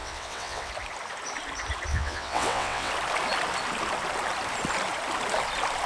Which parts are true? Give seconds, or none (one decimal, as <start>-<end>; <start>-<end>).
0.7-1.9; 2.9-5.9